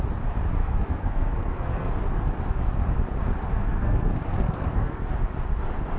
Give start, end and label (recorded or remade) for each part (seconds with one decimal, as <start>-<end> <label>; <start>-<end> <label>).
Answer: 0.0-0.6 recorded; 0.6-1.9 remade; 1.9-3.5 recorded; 3.5-5.0 remade; 5.0-6.0 recorded